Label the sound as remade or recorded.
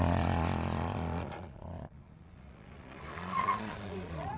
remade